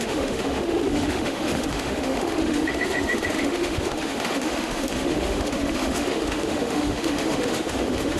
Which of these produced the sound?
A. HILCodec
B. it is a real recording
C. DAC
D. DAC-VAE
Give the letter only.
D